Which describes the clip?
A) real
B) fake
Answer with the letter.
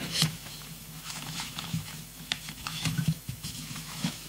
B